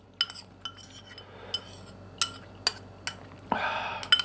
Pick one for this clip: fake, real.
real